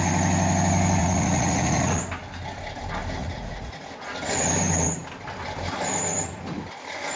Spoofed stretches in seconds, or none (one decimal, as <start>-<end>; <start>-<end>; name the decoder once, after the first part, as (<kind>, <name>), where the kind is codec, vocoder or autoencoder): 1.0-2.0 (vocoder, Vocos); 3.2-3.9